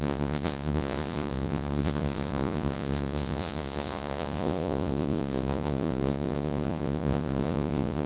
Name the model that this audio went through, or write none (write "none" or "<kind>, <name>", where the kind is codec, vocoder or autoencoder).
vocoder, Vocos